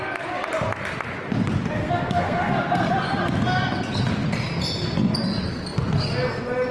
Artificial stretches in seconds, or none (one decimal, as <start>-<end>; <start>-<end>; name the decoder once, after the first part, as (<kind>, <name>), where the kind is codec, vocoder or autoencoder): 1.8-2.9 (codec, SNAC)